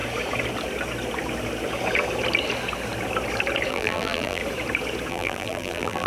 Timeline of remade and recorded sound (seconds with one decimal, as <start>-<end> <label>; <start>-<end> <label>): 0.0-3.7 recorded; 3.7-4.4 remade; 4.4-5.1 recorded; 5.1-6.1 remade